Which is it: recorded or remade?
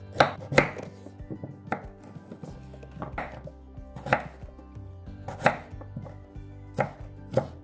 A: recorded